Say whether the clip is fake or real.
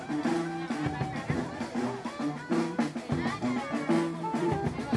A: real